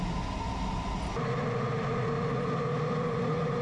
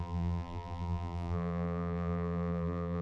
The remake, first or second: second